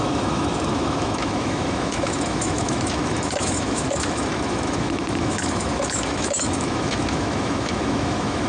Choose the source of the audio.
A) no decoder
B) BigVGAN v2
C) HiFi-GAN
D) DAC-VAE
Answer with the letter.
D